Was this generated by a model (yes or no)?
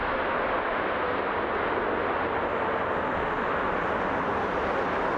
no